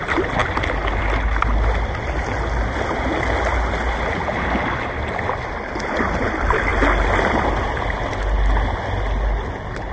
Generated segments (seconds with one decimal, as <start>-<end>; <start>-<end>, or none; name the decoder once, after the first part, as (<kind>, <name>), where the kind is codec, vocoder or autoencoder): none